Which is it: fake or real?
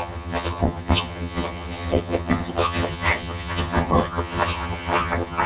fake